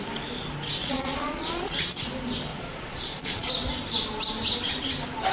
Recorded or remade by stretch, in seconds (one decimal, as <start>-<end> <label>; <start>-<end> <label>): 0.0-0.8 recorded; 0.8-2.0 remade; 2.0-2.5 recorded; 2.5-3.5 remade; 3.5-5.3 recorded